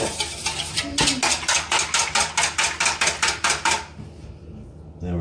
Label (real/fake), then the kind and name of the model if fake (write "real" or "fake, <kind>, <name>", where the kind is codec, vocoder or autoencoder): real